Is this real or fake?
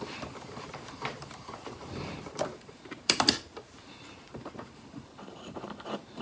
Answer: fake